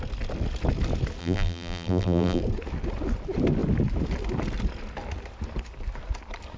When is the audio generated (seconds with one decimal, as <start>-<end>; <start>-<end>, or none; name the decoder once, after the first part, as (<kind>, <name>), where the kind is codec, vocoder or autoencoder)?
1.2-2.4 (vocoder, BigVGAN v2)